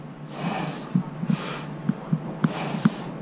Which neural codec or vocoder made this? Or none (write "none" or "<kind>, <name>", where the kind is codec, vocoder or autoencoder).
none